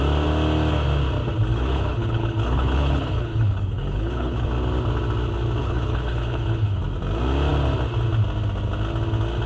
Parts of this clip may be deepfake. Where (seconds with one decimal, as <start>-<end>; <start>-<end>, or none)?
1.5-4.5; 5.6-6.8